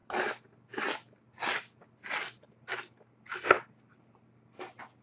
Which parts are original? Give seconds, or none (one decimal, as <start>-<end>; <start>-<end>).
0.0-5.0